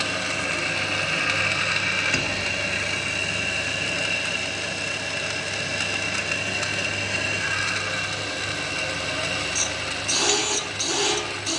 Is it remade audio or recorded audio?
recorded